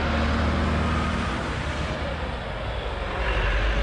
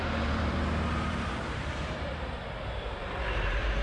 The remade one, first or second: second